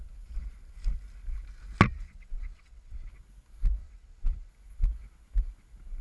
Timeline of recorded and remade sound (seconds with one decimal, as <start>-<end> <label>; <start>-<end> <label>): 0.0-1.9 recorded; 1.9-3.1 remade; 3.1-3.8 recorded; 3.8-4.5 remade; 4.5-6.0 recorded